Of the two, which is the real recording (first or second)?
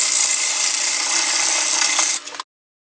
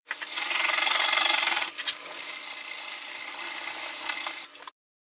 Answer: first